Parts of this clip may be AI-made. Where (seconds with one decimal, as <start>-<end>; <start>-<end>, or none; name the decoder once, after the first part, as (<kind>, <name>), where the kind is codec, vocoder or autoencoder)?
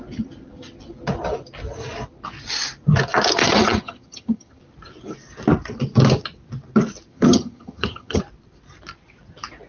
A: 3.4-4.6 (vocoder, HiFi-GAN); 7.1-8.2